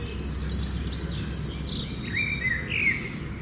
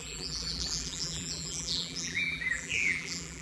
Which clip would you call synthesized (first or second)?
second